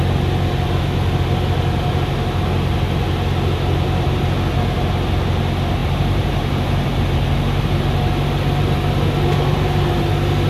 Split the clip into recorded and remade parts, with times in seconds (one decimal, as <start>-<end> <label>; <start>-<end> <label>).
0.0-5.8 recorded; 5.8-7.8 remade; 7.8-10.5 recorded